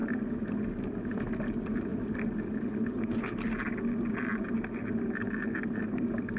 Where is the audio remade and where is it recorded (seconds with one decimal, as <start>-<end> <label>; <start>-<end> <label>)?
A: 0.0-6.4 recorded